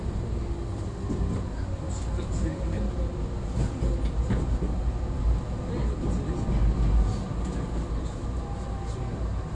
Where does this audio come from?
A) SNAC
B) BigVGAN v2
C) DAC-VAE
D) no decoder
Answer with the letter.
D